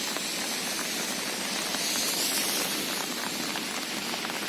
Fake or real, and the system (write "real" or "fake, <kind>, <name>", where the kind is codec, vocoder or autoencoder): real